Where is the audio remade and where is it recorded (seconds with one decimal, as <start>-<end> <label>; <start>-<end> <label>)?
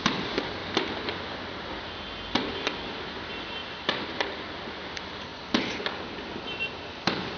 0.0-7.4 recorded